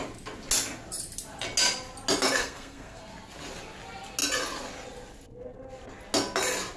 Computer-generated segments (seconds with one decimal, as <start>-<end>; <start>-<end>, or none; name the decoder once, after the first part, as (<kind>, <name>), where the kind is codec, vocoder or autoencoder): 2.4-3.0 (codec, SNAC)